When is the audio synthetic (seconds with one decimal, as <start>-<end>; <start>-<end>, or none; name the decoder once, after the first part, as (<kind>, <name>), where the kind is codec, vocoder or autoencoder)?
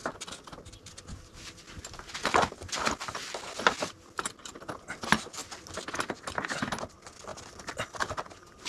none